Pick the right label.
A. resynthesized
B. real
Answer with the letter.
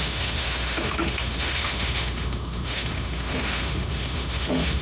A